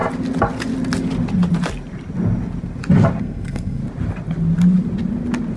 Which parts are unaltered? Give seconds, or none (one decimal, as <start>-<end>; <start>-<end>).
0.0-3.2; 3.8-5.6